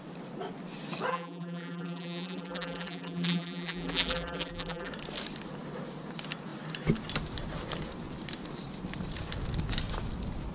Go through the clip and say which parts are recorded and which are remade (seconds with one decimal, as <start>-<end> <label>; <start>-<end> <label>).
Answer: 0.0-1.1 recorded; 1.1-4.9 remade; 4.9-10.5 recorded